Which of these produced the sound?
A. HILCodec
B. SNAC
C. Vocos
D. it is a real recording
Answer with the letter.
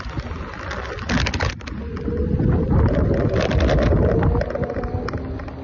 D